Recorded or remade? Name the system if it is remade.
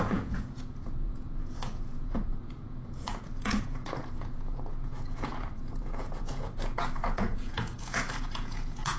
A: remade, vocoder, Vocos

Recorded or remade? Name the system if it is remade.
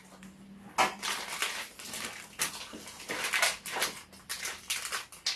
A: recorded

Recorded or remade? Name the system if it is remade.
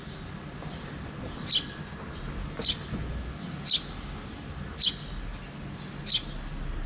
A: recorded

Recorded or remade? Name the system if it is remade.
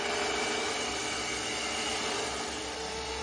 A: recorded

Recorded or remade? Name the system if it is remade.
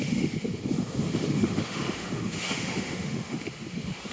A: remade, autoencoder, DAC-VAE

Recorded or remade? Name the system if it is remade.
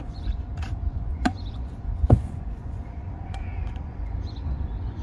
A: remade, vocoder, Vocos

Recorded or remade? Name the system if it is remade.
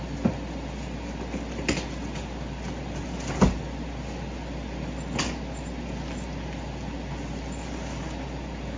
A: recorded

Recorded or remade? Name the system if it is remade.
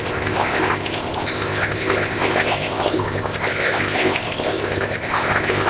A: remade, codec, ZipCodec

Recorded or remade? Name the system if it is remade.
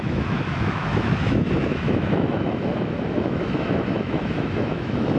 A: remade, autoencoder, DAC-VAE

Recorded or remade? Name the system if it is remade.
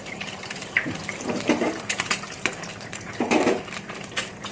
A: remade, vocoder, BigVGAN v2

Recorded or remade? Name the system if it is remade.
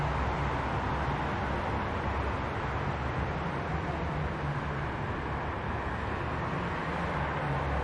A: recorded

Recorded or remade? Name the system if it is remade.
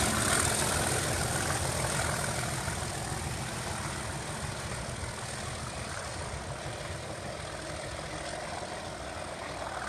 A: recorded